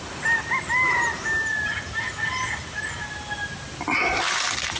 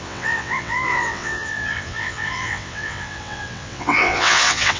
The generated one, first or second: second